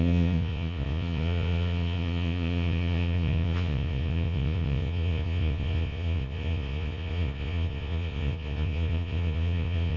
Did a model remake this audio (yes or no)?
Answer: yes